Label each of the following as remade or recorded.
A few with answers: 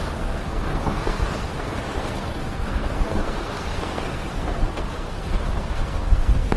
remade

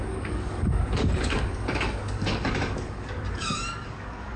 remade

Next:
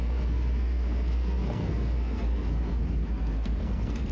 remade